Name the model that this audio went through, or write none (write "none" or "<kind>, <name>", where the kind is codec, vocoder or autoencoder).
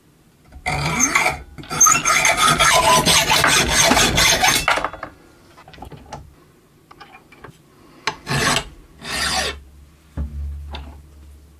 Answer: none